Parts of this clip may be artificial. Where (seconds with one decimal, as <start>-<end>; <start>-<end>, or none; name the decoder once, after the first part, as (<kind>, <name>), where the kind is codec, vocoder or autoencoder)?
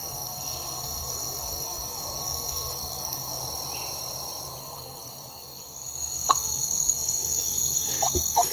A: 0.0-3.4 (codec, SNAC); 4.6-8.5